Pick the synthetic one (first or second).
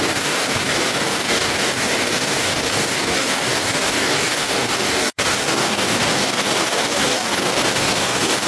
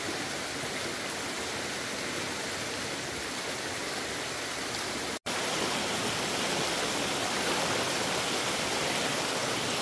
first